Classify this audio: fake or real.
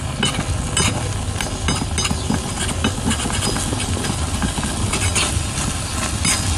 real